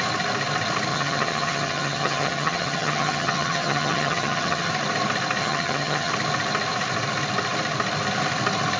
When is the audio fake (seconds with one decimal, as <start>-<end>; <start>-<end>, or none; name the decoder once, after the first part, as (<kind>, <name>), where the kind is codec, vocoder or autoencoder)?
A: 0.9-4.7 (vocoder, HiFi-GAN); 5.4-6.1